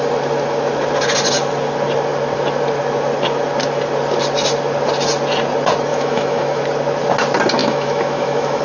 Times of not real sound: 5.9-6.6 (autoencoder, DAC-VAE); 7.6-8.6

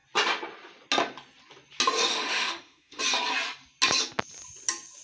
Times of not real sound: 2.1-3.0 (autoencoder, DAC-VAE)

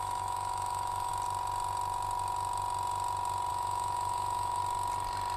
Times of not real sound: 0.0-1.1 (autoencoder, DAC-VAE); 3.5-4.6

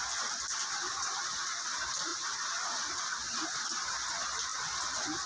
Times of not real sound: none

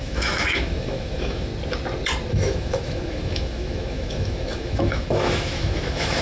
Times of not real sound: 0.0-1.5 (autoencoder, DAC-VAE); 2.3-6.2